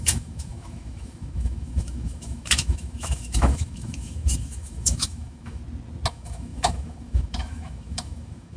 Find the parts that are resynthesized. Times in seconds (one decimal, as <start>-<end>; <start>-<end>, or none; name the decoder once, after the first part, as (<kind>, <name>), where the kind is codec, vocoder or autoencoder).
0.0-5.6 (autoencoder, DAC-VAE); 6.1-8.6